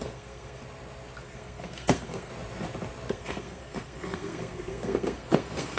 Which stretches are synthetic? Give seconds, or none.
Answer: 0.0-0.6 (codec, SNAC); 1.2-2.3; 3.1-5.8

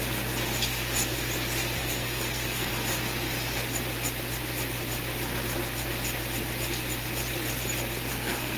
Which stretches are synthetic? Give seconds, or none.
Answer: 1.8-2.7 (codec, SNAC); 8.1-8.6

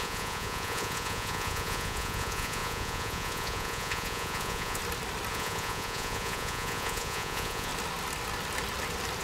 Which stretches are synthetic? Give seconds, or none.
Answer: 0.0-4.8 (vocoder, Vocos); 5.3-7.7

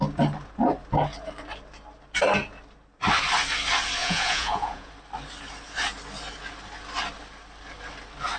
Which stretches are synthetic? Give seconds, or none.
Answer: 4.0-4.9 (vocoder, Vocos)

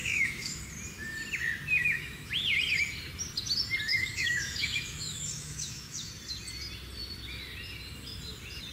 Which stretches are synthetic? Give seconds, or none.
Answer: 0.0-0.6 (autoencoder, DAC-VAE); 1.8-2.3; 3.9-6.1